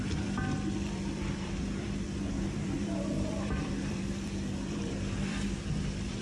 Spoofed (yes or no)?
yes